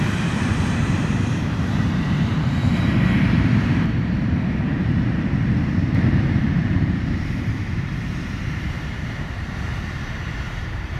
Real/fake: fake